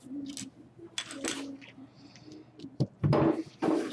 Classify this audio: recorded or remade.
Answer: recorded